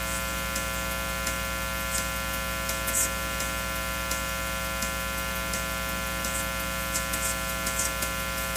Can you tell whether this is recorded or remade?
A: recorded